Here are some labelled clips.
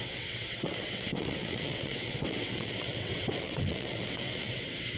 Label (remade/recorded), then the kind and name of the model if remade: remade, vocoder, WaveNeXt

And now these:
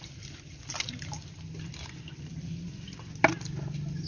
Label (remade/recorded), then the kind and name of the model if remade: remade, vocoder, BigVGAN v2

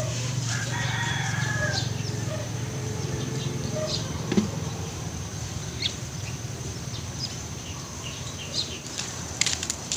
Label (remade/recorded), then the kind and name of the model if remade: remade, vocoder, BigVGAN v2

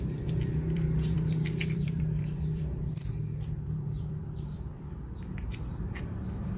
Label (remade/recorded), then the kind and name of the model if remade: remade, vocoder, BigVGAN v2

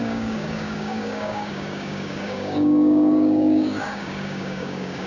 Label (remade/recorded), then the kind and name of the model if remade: remade, codec, DAC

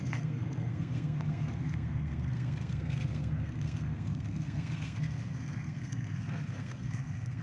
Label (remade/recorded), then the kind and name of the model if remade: remade, codec, SNAC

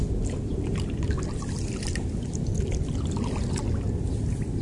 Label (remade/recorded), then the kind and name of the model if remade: recorded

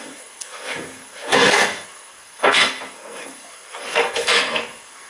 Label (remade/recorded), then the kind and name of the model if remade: remade, codec, SNAC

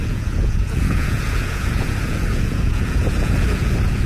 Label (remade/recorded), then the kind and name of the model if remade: remade, vocoder, Vocos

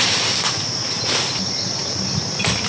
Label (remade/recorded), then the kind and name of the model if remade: recorded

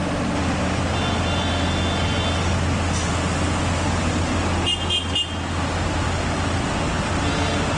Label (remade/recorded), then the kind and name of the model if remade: recorded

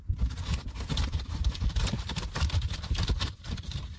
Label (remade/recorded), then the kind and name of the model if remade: recorded